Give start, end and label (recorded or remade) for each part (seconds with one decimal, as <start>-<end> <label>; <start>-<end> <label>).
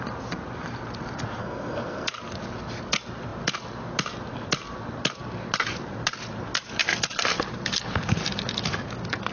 0.0-1.4 recorded; 1.4-2.1 remade; 2.1-9.3 recorded